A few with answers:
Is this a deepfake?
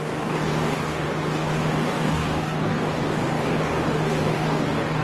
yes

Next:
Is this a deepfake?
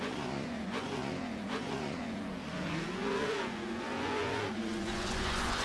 yes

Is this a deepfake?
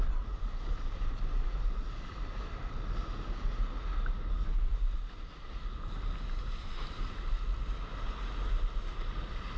no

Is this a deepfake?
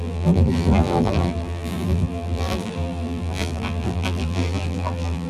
yes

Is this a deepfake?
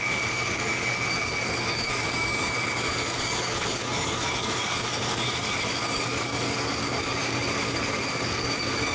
yes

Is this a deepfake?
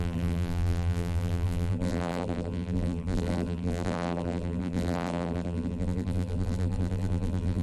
yes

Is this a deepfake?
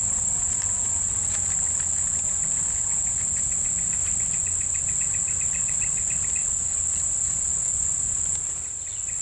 no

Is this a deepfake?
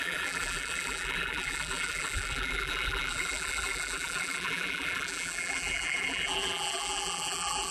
yes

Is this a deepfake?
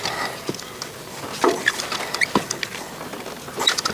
no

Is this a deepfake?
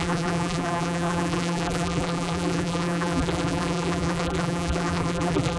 yes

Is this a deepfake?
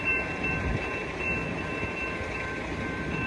yes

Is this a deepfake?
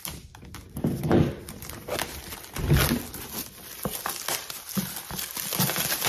no